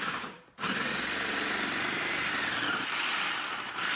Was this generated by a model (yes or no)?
yes